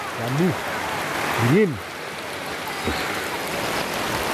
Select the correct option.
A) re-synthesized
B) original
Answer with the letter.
B